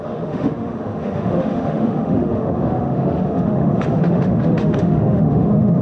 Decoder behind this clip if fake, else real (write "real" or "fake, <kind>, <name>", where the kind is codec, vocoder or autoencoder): fake, autoencoder, DAC-VAE